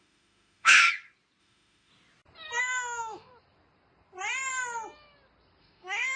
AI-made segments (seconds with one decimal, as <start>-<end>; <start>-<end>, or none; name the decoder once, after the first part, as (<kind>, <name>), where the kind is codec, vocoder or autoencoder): 0.0-0.9 (autoencoder, DAC-VAE); 1.4-1.9; 2.6-3.3; 5.6-6.2